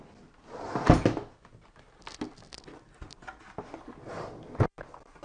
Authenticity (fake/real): real